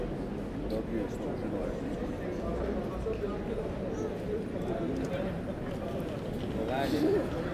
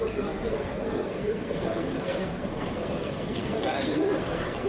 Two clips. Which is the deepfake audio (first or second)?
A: second